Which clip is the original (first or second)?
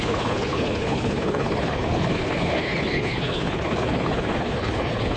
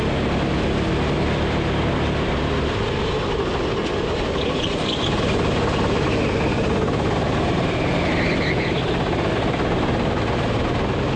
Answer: second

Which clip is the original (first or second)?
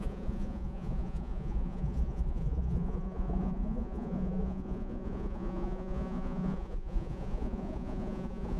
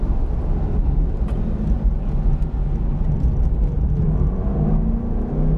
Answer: second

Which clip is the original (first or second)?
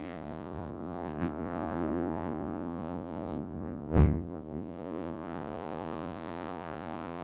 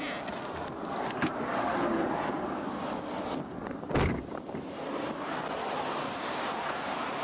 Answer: second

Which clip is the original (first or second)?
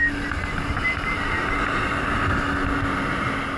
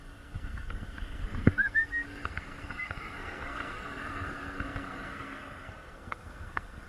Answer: first